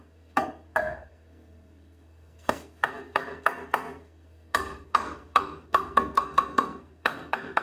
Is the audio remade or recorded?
remade